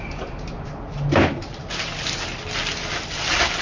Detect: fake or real real